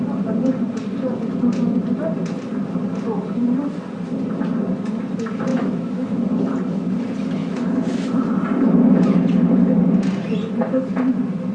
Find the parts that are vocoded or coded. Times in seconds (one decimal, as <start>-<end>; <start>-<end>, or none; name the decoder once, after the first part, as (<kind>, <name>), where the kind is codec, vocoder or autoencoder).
5.5-6.2 (autoencoder, DAC-VAE); 7.4-8.1